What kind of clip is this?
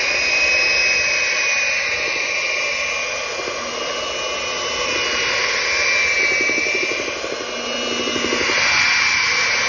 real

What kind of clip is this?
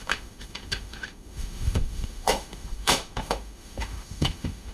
fake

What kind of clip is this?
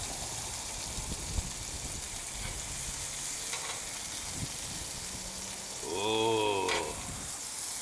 real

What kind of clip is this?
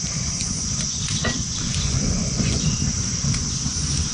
fake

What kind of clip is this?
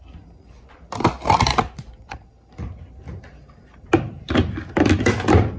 real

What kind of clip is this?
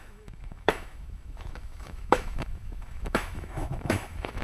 fake